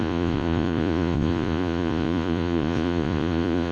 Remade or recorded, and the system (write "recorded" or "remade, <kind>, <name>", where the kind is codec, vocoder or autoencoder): remade, vocoder, Vocos